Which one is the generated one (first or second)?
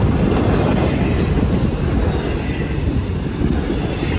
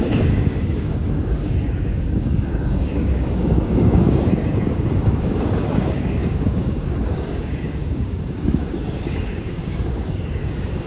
second